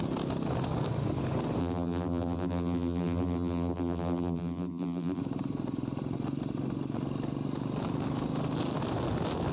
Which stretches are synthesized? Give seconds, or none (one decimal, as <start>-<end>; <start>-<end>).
1.6-5.2